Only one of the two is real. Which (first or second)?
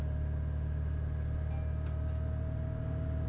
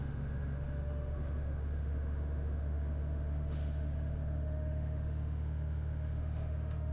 first